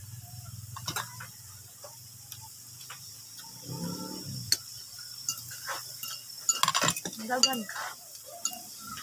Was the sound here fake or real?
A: real